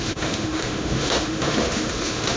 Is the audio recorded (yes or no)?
no